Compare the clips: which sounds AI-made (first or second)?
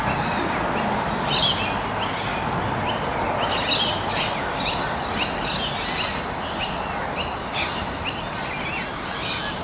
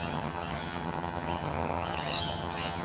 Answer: second